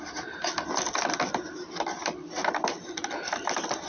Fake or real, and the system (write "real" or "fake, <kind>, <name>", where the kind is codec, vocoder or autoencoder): real